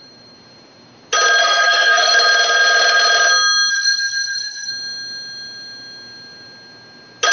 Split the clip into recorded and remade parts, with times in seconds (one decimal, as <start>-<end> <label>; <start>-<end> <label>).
0.0-1.4 recorded; 1.4-2.1 remade; 2.1-3.7 recorded; 3.7-4.7 remade; 4.7-7.3 recorded